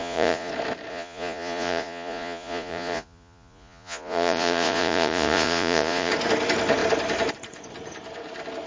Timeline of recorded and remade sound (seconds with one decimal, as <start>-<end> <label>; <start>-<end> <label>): 0.0-0.5 remade; 0.5-0.9 recorded; 0.9-6.1 remade; 6.1-8.7 recorded